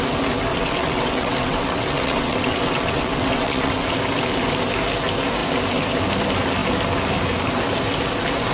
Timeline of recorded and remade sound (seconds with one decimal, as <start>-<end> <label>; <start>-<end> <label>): 0.0-0.5 recorded; 0.5-3.9 remade; 3.9-8.5 recorded